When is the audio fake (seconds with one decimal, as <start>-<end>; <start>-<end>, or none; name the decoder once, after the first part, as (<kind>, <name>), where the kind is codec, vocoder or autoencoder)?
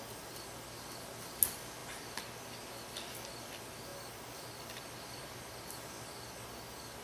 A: none